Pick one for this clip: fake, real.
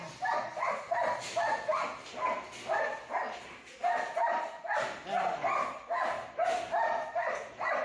real